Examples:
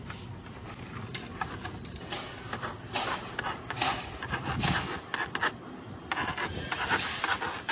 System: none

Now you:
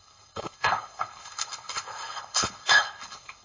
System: codec, HILCodec